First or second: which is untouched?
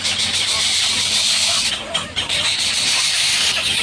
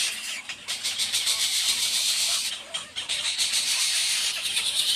first